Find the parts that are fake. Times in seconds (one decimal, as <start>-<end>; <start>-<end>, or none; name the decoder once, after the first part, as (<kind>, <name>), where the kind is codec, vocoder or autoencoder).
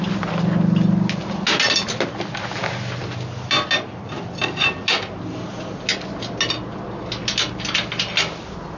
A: none